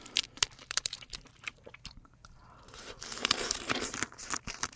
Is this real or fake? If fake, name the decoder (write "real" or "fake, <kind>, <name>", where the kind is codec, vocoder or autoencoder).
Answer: fake, vocoder, BigVGAN v2